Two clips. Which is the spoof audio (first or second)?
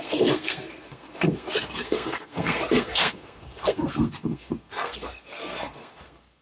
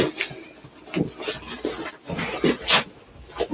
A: first